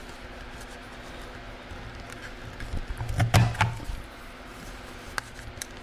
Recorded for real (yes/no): yes